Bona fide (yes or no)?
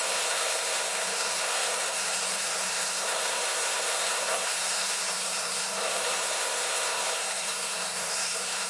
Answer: no